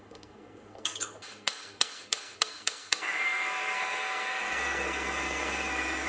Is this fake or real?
fake